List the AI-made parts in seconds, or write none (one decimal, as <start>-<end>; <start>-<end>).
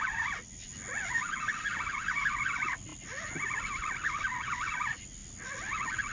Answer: none